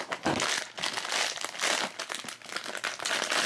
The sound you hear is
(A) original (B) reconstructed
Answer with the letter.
A